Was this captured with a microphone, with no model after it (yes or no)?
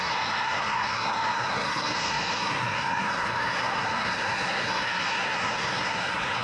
no